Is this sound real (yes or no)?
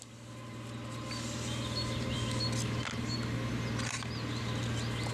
yes